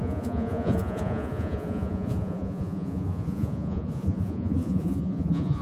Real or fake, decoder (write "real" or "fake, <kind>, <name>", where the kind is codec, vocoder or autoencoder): fake, vocoder, Vocos